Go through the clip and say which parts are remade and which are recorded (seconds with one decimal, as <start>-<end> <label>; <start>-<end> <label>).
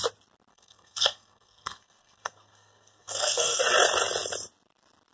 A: 0.0-0.5 recorded; 0.5-3.6 remade; 3.6-5.1 recorded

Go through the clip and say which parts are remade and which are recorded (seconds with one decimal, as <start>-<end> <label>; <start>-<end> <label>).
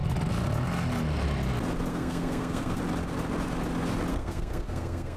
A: 0.0-1.9 recorded; 1.9-2.8 remade; 2.8-4.1 recorded; 4.1-5.2 remade